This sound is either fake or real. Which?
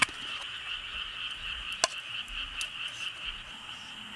real